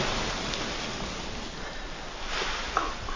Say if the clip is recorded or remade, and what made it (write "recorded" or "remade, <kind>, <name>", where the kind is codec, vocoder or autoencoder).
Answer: recorded